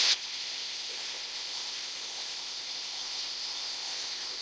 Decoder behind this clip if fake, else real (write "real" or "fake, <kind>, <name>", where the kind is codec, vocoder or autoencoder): fake, codec, ZipCodec